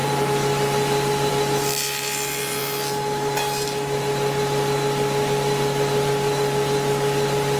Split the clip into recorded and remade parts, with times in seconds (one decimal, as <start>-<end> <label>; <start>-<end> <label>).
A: 0.0-7.6 recorded